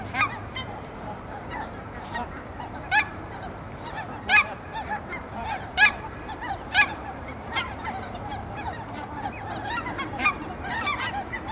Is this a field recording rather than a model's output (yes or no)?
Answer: no